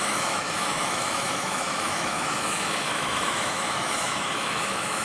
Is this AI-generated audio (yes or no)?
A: yes